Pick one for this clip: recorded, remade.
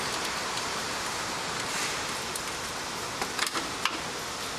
recorded